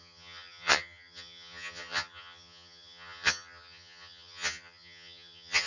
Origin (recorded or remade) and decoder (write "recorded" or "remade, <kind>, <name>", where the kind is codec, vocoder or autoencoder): remade, vocoder, HiFi-GAN